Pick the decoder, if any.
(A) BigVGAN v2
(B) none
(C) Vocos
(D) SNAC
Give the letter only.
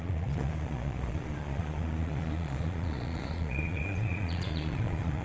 C